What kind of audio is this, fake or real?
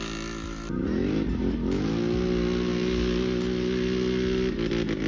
real